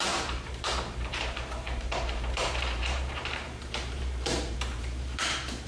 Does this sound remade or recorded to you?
remade